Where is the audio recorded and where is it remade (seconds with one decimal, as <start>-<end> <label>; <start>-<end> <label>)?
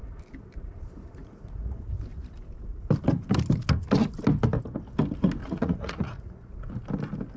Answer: 0.0-1.2 recorded; 1.2-1.8 remade; 1.8-5.4 recorded; 5.4-6.5 remade; 6.5-7.4 recorded